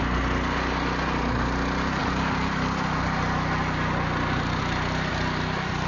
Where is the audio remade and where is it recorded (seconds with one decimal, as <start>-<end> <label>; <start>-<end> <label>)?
0.0-5.9 recorded

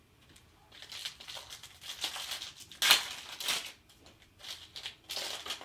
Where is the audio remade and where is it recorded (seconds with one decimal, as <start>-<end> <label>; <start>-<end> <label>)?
0.0-5.6 recorded

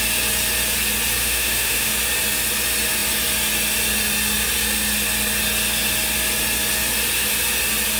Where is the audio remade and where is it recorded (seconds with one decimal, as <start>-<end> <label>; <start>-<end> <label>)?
0.0-1.2 recorded; 1.2-1.9 remade; 1.9-8.0 recorded